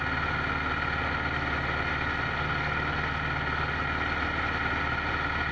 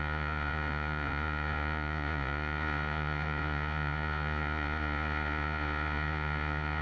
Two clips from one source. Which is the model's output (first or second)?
second